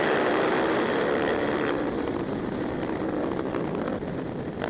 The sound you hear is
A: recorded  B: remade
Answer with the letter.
B